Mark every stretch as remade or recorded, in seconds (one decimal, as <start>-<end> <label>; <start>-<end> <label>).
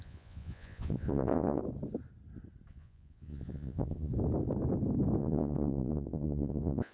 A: 0.0-1.6 remade; 1.6-2.7 recorded; 2.7-4.1 remade; 4.1-5.2 recorded; 5.2-6.9 remade